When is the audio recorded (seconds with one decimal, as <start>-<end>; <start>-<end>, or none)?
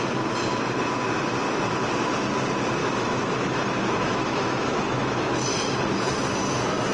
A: 0.0-2.8; 5.4-6.9